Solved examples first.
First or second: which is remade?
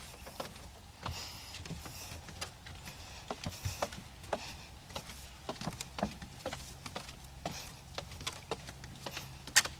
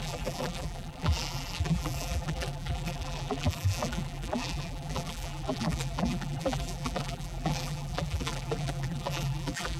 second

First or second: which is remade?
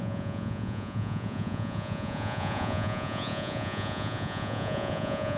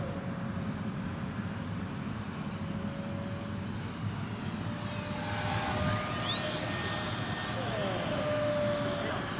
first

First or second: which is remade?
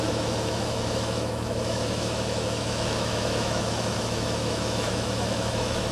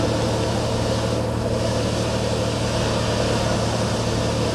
first